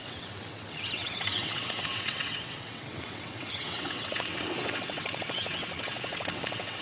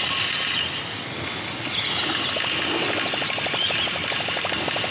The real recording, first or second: second